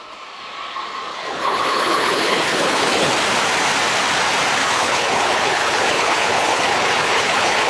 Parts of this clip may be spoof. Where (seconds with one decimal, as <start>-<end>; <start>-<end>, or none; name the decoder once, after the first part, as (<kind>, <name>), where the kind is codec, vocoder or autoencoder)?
1.1-3.1 (codec, HILCodec); 4.6-7.7